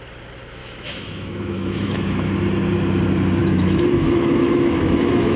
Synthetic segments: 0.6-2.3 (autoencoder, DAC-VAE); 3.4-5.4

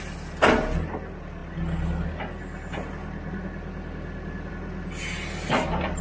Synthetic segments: none

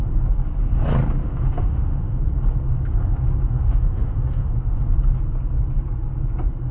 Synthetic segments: 1.2-2.2 (autoencoder, DAC-VAE); 3.6-4.8

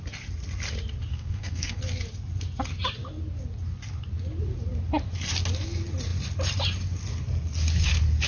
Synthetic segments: 1.1-1.8 (codec, SNAC)